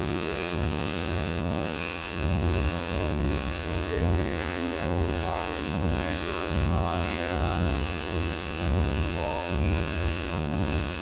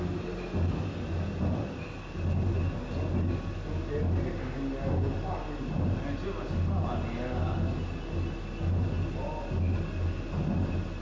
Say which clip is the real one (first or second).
second